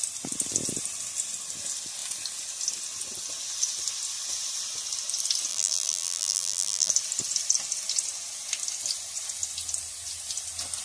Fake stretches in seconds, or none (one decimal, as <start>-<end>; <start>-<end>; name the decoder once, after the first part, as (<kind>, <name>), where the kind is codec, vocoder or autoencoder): 5.5-6.9 (vocoder, BigVGAN v2)

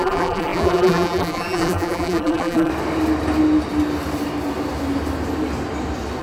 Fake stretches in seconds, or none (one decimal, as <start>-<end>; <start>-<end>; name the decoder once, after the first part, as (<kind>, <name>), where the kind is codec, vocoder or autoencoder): 0.0-2.7 (vocoder, BigVGAN v2)